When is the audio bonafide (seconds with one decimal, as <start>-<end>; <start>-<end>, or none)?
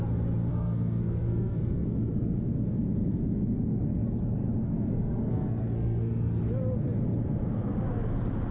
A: 0.0-0.5; 2.5-4.6; 6.4-8.5